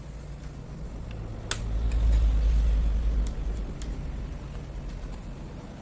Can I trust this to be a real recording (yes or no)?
yes